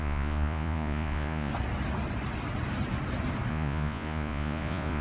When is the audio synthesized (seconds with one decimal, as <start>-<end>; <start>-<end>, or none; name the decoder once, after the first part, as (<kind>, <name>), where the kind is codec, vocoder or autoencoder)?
0.0-1.5 (vocoder, Vocos); 3.5-5.0